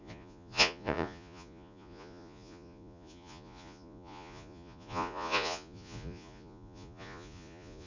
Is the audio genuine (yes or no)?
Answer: no